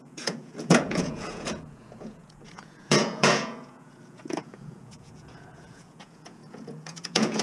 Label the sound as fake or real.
fake